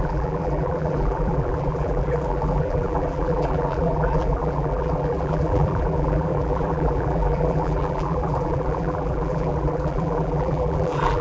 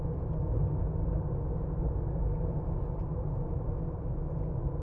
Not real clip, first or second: first